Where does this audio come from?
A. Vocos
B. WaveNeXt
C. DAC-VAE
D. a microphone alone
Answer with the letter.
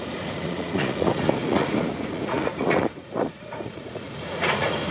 A